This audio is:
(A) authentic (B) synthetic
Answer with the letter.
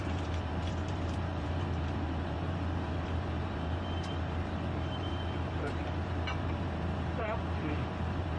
B